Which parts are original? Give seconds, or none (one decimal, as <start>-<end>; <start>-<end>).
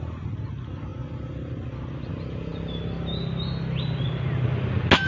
0.0-5.1